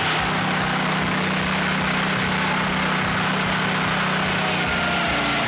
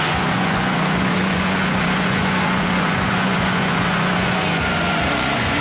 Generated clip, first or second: second